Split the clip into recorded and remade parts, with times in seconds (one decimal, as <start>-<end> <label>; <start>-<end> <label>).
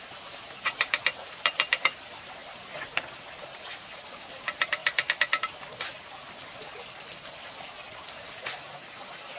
0.0-4.8 remade; 4.8-8.4 recorded; 8.4-9.4 remade